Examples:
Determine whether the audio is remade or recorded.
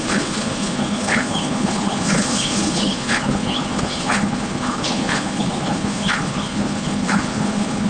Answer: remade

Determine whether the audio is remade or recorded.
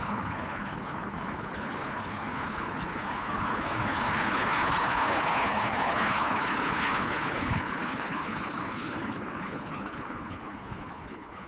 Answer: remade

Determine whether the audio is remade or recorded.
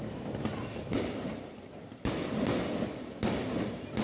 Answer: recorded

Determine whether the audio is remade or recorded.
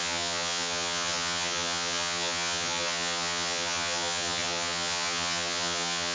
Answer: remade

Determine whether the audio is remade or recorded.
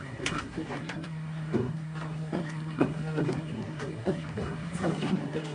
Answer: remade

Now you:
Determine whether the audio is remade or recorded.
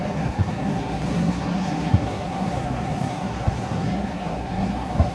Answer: remade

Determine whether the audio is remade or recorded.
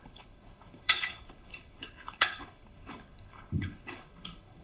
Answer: remade